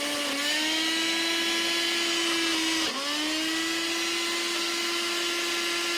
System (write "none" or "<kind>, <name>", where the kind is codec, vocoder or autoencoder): none